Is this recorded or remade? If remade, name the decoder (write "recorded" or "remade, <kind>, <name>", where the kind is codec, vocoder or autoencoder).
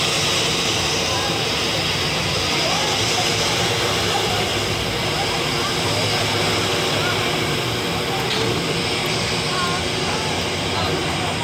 recorded